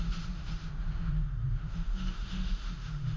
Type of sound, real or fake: fake